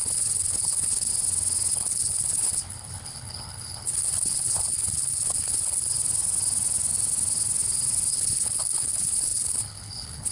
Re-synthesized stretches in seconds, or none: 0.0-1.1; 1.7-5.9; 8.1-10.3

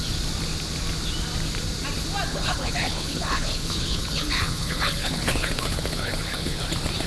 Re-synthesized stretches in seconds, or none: 2.3-6.6

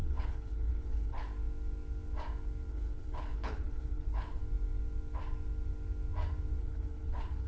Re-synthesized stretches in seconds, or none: 0.0-1.3; 2.7-4.4; 6.6-7.5

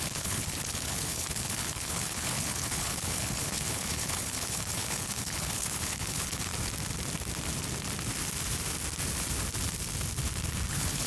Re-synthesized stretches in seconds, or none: 0.0-6.5; 10.7-11.1

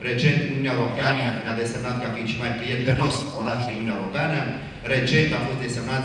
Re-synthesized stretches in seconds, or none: 0.9-1.5; 2.8-3.9

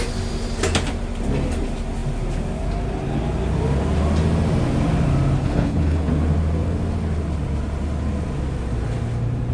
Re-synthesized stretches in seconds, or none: 5.4-6.1